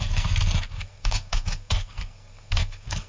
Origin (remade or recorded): remade